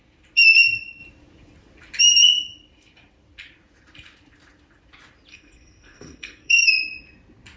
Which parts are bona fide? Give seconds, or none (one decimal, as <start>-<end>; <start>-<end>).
0.0-5.3; 6.7-7.6